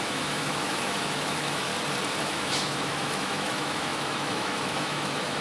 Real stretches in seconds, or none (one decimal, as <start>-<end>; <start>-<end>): 1.7-2.2